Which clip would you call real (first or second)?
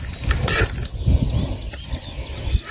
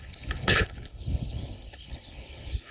first